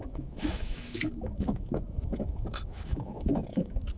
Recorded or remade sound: remade